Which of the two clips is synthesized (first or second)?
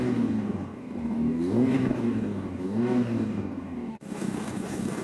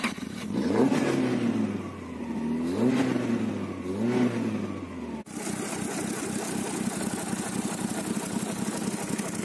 first